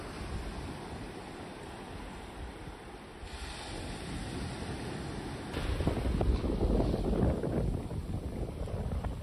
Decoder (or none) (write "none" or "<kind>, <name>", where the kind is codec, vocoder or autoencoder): none